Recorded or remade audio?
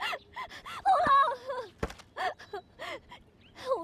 recorded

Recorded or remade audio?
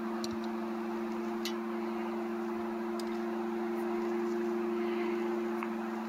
recorded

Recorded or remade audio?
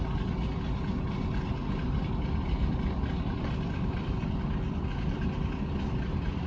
remade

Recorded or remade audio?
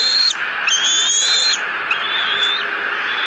recorded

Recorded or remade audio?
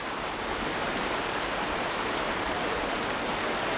recorded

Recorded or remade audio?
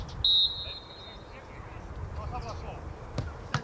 recorded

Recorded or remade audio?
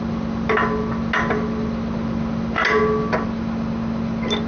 recorded